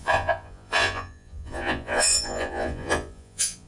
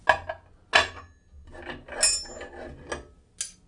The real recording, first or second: second